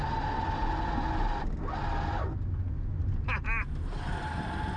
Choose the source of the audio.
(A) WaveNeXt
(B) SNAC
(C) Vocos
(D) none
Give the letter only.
D